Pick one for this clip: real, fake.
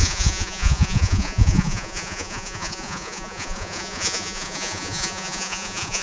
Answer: fake